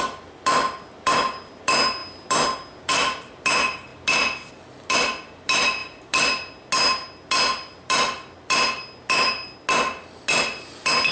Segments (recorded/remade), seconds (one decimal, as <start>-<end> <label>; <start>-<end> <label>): 0.0-11.1 recorded

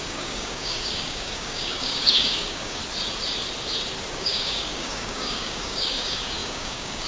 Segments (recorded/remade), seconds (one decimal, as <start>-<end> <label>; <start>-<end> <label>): 0.0-2.8 remade; 2.8-4.1 recorded; 4.1-7.1 remade

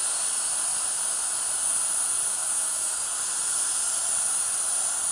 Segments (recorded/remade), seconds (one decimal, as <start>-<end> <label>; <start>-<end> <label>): 0.0-2.3 recorded; 2.3-3.0 remade; 3.0-5.1 recorded